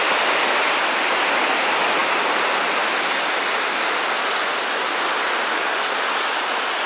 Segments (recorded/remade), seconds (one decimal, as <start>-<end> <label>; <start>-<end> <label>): 0.0-6.9 recorded